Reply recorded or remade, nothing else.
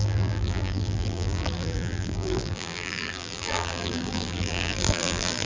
remade